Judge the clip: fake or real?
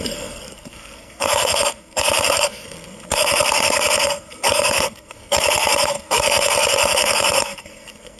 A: fake